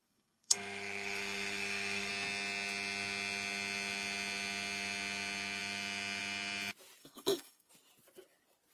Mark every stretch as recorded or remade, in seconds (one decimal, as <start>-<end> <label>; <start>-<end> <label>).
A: 0.0-2.1 remade; 2.1-7.0 recorded; 7.0-7.7 remade; 7.7-8.7 recorded

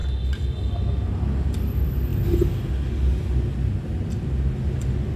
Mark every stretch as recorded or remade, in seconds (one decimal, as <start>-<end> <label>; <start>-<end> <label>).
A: 0.0-5.2 recorded